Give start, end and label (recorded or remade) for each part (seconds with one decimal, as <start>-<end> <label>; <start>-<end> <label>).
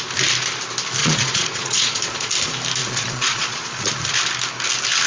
0.0-1.0 recorded; 1.0-2.3 remade; 2.3-2.8 recorded; 2.8-3.9 remade; 3.9-5.1 recorded